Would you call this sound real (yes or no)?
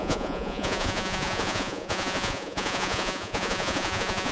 no